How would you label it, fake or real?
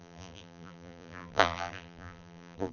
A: fake